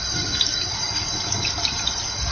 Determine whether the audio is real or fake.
real